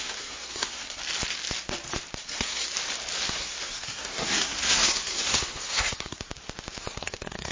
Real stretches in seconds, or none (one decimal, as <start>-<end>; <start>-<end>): 1.0-2.2; 2.7-3.3; 6.3-6.8